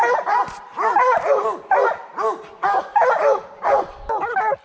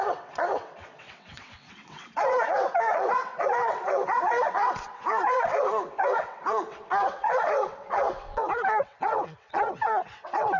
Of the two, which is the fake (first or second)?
second